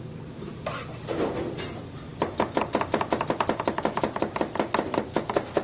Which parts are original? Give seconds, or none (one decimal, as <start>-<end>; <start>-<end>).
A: 0.0-2.1; 3.7-5.6